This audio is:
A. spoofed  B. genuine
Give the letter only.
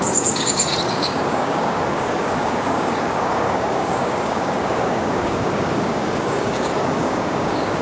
A